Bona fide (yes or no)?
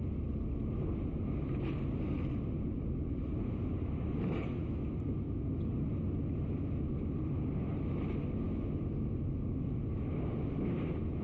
yes